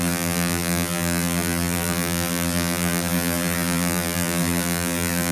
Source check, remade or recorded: remade